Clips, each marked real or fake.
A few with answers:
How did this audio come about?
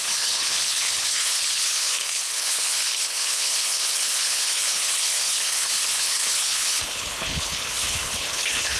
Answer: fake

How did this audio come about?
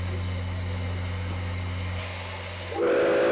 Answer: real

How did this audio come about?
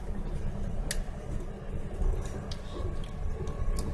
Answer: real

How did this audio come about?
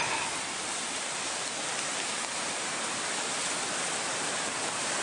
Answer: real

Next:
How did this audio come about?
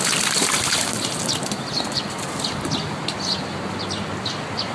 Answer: real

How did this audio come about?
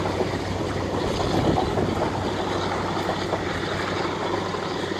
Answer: real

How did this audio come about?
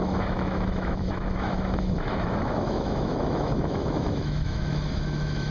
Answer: fake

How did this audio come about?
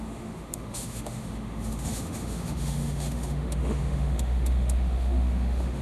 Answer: fake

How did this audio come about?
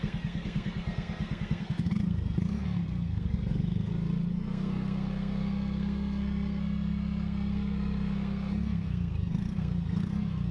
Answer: fake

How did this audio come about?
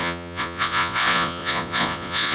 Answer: fake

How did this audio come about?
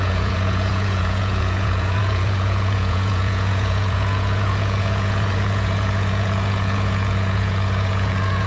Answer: fake